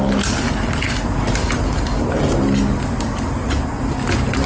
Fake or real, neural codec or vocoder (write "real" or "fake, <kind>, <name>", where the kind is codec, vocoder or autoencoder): real